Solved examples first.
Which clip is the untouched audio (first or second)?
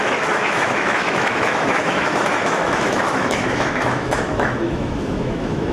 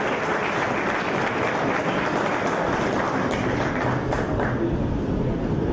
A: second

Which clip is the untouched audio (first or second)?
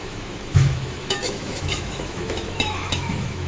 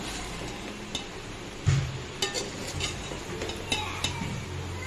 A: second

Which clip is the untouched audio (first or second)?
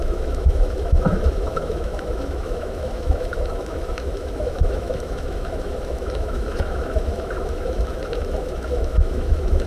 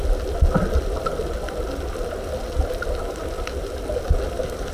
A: second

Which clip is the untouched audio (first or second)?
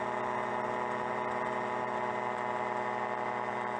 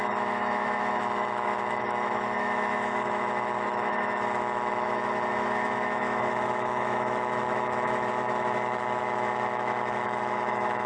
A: first